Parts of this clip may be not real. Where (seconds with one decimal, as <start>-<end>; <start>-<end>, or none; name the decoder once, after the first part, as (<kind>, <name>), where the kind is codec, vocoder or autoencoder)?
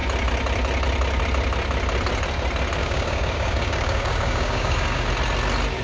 2.8-5.1 (codec, DAC)